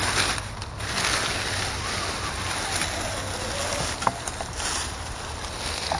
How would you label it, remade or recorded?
recorded